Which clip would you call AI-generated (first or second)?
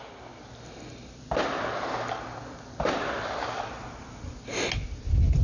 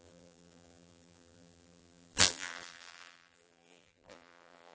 second